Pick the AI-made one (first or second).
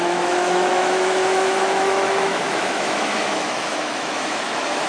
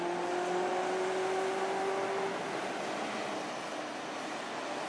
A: first